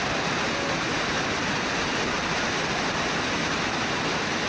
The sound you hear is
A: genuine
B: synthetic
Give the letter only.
A